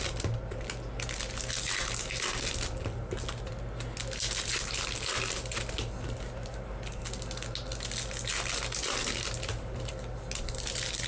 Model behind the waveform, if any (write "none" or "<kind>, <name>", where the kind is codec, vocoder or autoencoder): none